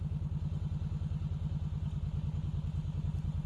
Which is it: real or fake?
real